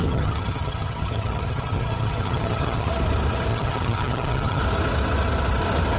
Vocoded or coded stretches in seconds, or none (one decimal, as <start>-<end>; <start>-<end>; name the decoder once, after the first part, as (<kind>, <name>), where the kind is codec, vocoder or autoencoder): 0.0-2.9 (vocoder, HiFi-GAN); 3.5-4.6